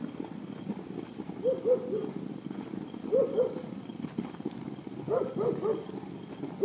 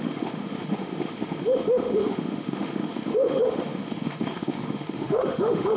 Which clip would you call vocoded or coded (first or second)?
second